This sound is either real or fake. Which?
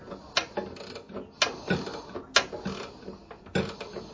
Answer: real